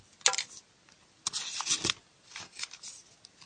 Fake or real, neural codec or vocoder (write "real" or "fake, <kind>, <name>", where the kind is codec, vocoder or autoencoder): real